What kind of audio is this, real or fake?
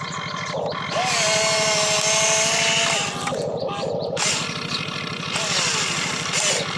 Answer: real